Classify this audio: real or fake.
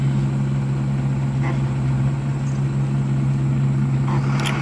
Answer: real